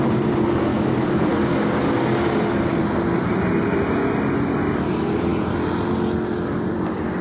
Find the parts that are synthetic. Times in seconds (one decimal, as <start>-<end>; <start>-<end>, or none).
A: 0.7-1.3